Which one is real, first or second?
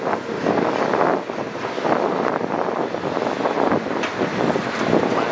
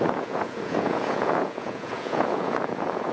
first